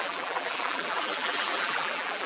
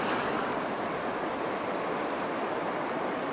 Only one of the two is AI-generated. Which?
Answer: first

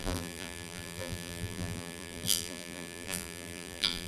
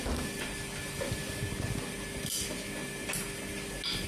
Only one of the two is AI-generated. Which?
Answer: first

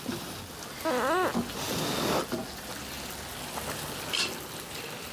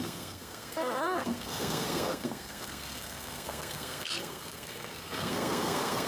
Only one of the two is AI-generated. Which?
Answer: second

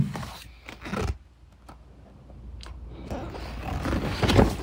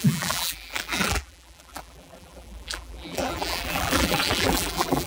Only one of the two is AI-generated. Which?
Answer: second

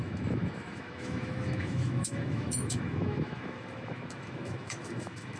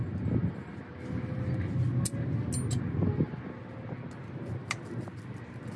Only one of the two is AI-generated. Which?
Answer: first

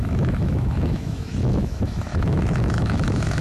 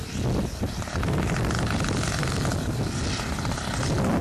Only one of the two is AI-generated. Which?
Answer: first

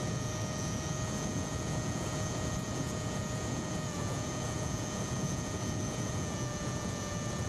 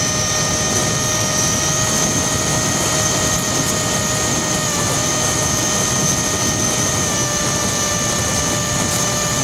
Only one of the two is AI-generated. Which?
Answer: first